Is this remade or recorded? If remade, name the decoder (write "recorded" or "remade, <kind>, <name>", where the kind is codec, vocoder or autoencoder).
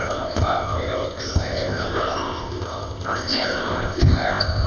remade, codec, ZipCodec